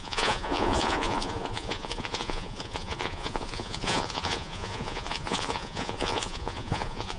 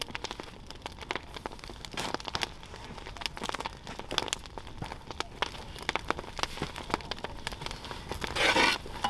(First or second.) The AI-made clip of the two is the first